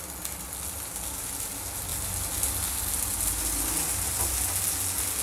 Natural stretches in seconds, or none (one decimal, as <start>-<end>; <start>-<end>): 0.0-5.2